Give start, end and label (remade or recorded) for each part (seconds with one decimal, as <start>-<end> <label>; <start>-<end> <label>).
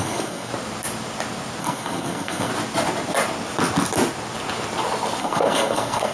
0.0-0.5 remade; 0.5-1.6 recorded; 1.6-2.5 remade; 2.5-5.2 recorded; 5.2-6.1 remade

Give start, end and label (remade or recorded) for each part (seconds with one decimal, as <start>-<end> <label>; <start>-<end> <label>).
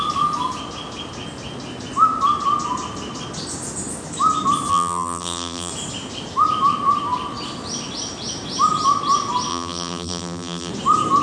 0.0-4.7 recorded; 4.7-5.7 remade; 5.7-9.5 recorded; 9.5-10.7 remade; 10.7-11.2 recorded